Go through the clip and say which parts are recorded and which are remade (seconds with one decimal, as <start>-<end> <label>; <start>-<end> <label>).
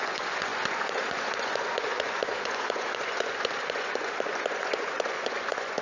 0.0-5.8 remade